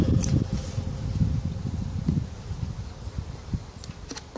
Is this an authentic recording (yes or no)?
yes